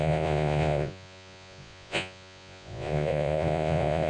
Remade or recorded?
remade